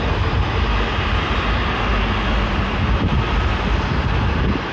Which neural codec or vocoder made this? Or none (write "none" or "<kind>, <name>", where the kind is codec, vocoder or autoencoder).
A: none